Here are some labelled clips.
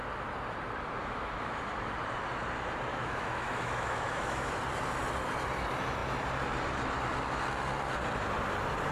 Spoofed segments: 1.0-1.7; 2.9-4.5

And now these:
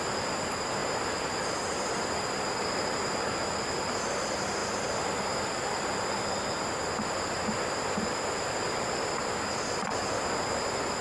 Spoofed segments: none

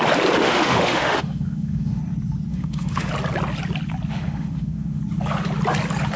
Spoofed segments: 0.4-2.0; 2.5-3.1; 4.1-5.0

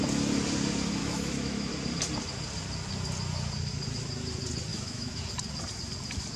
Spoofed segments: 1.0-1.7; 4.7-5.2

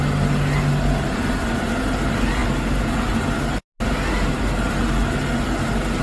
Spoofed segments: none